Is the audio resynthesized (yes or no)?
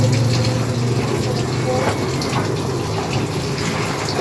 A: no